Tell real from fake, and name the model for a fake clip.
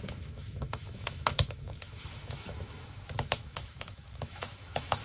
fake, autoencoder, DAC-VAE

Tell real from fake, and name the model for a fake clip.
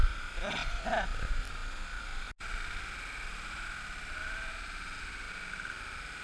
real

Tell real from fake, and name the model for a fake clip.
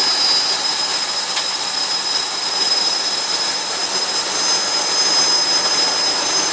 real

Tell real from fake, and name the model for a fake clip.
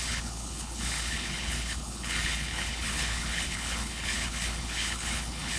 fake, codec, HILCodec